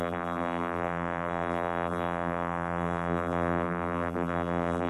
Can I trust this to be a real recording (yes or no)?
no